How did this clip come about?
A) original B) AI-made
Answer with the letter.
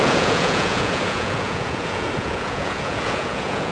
B